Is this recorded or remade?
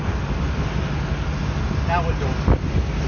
recorded